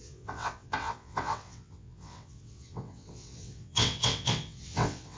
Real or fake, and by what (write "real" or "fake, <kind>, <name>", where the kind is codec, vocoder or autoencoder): fake, vocoder, WaveNeXt